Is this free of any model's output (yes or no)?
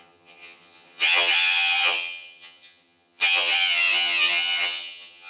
no